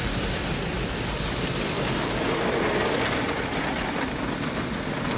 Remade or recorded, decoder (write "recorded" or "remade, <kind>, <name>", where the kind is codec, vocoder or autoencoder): recorded